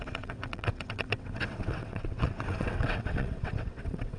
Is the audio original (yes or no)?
no